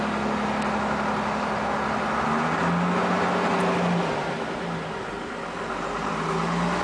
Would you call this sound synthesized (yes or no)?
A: no